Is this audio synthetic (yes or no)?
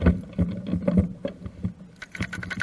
no